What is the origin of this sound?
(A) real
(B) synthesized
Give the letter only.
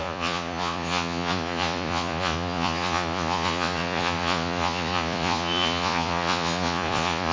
B